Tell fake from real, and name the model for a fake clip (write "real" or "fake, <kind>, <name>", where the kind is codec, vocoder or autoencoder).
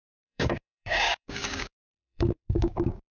fake, codec, DAC